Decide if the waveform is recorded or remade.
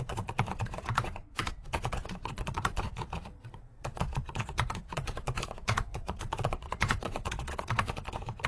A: remade